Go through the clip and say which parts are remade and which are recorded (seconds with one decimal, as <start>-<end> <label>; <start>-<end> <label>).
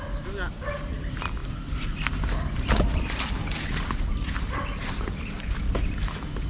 0.0-6.5 recorded